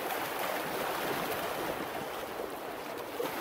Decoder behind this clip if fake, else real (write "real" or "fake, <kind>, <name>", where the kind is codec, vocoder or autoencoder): real